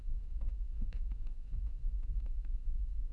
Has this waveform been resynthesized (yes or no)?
yes